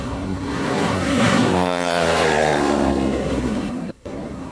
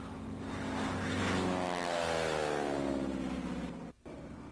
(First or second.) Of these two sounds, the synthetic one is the first